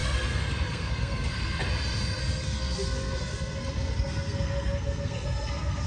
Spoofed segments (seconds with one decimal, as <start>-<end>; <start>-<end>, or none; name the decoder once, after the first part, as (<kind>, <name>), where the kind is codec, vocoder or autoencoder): 0.0-1.6 (codec, SNAC); 2.2-5.9